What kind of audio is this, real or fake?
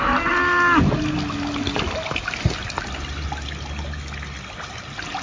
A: real